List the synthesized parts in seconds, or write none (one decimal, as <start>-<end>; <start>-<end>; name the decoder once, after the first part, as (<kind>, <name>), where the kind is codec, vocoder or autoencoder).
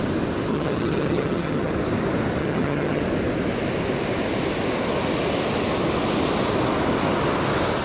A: 0.5-1.7 (vocoder, HiFi-GAN); 2.4-3.0